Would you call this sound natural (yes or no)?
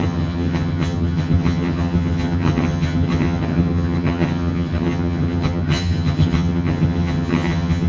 no